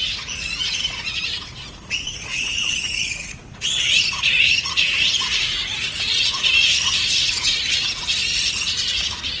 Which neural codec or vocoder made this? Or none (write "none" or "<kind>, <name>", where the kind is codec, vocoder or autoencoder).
vocoder, Vocos